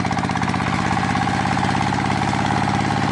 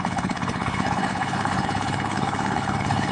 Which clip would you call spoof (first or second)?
second